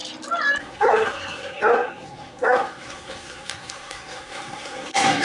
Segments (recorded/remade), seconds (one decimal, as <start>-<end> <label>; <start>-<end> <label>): 0.0-0.6 recorded; 0.6-5.2 remade